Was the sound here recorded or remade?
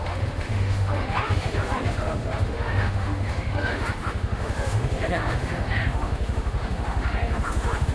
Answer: remade